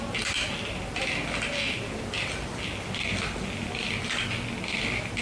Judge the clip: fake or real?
real